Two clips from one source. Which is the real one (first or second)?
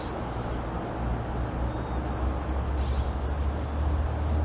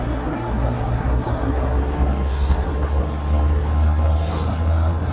first